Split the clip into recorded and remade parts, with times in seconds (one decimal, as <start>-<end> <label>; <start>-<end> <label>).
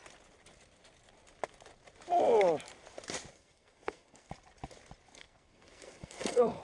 0.0-3.3 recorded; 3.3-4.3 remade; 4.3-5.1 recorded; 5.1-6.6 remade